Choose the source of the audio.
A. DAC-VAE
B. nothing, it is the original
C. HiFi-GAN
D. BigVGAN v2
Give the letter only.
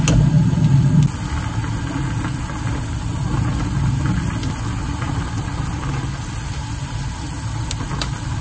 B